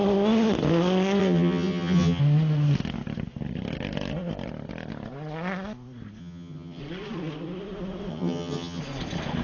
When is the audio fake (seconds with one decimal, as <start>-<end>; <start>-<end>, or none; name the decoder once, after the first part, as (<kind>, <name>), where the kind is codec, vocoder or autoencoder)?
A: 1.2-2.2 (vocoder, HiFi-GAN); 6.2-6.8; 8.1-8.8